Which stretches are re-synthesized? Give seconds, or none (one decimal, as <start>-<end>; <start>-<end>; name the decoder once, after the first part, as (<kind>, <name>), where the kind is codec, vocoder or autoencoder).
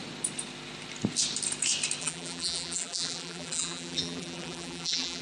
2.0-5.2 (vocoder, BigVGAN v2)